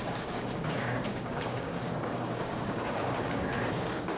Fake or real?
fake